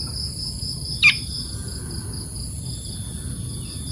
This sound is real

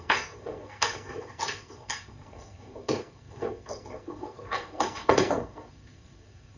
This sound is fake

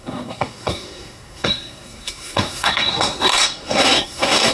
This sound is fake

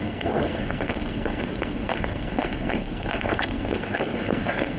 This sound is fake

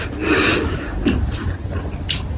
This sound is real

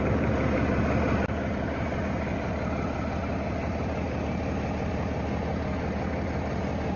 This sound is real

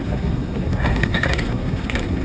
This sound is fake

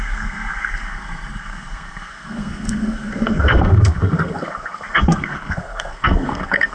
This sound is fake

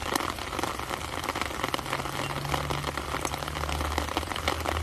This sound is real